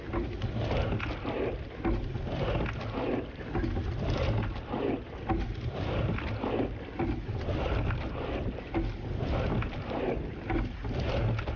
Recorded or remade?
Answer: recorded